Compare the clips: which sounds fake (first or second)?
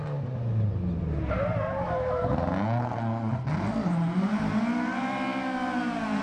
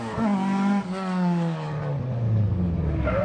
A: second